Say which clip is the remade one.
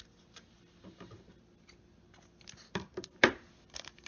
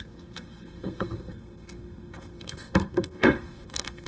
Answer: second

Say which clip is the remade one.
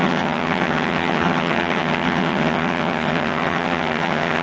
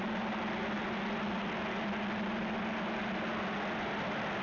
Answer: first